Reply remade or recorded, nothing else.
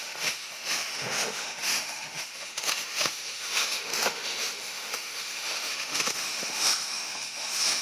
remade